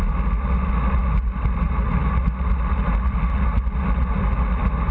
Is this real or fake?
real